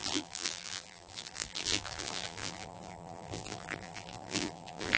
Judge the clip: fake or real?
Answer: fake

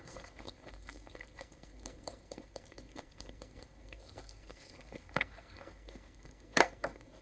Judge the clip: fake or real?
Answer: fake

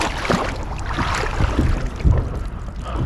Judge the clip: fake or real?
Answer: real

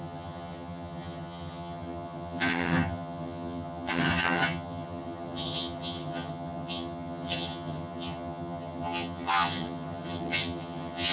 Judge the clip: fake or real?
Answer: fake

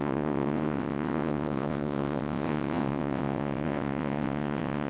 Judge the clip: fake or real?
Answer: fake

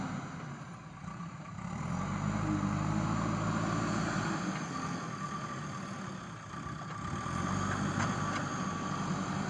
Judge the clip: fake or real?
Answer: real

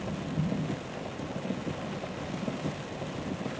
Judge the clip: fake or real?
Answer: real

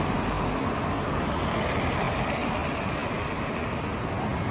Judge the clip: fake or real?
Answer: real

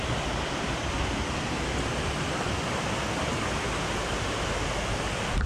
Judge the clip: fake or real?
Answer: real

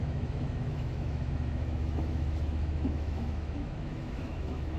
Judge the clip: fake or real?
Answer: fake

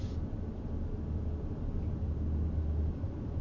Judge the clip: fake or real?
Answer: real